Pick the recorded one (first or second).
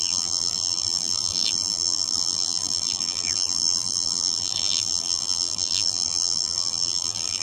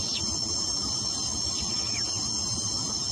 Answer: second